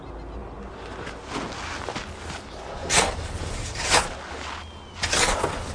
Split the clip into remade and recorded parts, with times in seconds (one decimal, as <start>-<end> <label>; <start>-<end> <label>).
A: 0.0-2.8 recorded; 2.8-4.2 remade; 4.2-5.7 recorded

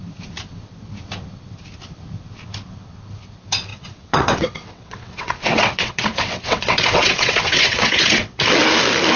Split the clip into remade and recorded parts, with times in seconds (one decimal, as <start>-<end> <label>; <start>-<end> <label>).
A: 0.0-3.7 recorded; 3.7-8.4 remade; 8.4-9.2 recorded